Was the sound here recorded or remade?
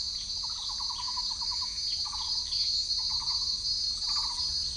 recorded